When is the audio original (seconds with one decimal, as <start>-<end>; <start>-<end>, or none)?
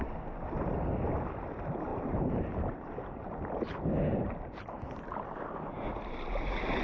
0.0-1.9; 3.3-4.1; 4.8-6.8